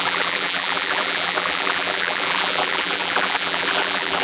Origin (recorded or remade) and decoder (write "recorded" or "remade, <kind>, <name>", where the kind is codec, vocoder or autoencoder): remade, vocoder, BigVGAN v2